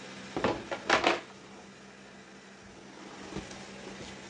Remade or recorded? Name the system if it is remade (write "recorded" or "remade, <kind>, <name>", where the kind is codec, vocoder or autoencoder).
recorded